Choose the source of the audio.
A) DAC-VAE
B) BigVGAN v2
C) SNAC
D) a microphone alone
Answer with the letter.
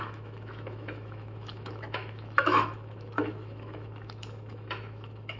A